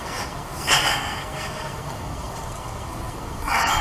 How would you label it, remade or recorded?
remade